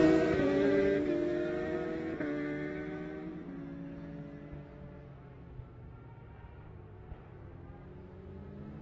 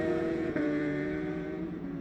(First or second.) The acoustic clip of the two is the first